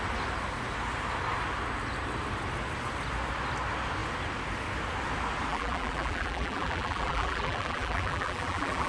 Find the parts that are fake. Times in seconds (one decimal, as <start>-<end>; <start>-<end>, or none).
5.5-8.9

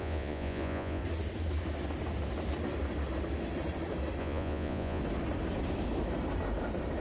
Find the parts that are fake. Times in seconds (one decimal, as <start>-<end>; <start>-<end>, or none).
0.0-1.0; 4.2-5.0

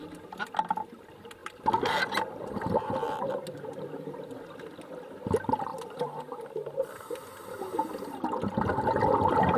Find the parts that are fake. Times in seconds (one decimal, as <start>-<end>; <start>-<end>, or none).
1.4-3.3; 5.7-6.2

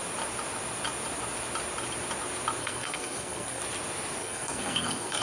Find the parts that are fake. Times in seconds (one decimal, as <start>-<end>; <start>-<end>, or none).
2.6-3.6; 4.2-5.2

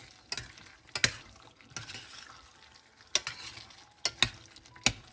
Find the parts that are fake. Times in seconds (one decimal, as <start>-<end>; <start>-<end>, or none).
none

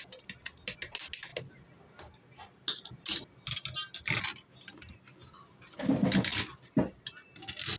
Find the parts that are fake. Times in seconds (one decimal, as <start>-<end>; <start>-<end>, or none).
none

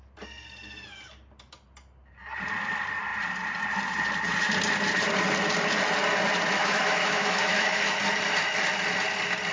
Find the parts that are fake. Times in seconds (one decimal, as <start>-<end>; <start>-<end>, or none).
6.6-8.0